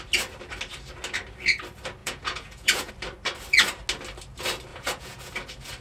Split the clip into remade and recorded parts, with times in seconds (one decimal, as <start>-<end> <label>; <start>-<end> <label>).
0.0-2.0 recorded; 2.0-2.9 remade; 2.9-4.7 recorded; 4.7-5.3 remade; 5.3-5.8 recorded